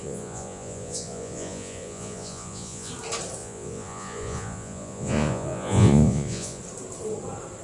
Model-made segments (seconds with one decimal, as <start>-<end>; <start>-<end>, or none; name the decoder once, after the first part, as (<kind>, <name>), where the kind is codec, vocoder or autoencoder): 0.0-2.9 (vocoder, Vocos); 3.4-6.6